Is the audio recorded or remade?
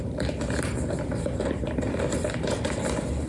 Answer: recorded